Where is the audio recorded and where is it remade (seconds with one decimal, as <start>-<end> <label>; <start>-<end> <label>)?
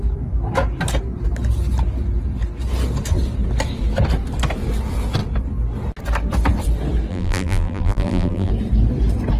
0.0-7.1 recorded; 7.1-8.5 remade; 8.5-9.4 recorded